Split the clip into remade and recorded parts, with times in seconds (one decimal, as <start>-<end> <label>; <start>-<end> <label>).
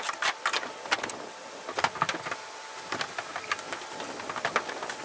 0.0-5.0 recorded